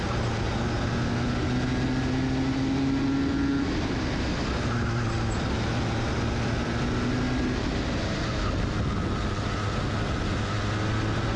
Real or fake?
real